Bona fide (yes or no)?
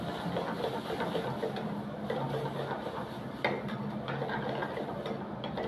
yes